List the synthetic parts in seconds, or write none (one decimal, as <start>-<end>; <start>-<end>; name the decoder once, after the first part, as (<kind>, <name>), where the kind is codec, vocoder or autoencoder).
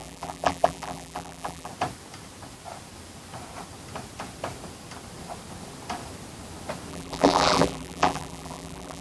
0.0-1.7 (vocoder, BigVGAN v2); 6.9-9.0